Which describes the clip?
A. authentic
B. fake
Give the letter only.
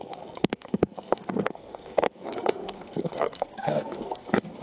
B